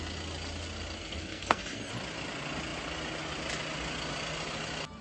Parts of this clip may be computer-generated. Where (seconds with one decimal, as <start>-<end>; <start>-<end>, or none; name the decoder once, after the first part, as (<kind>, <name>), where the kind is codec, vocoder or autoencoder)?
1.0-1.9 (codec, SNAC)